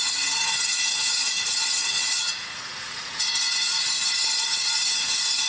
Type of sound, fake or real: fake